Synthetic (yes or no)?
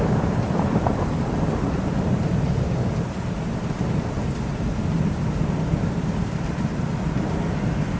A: yes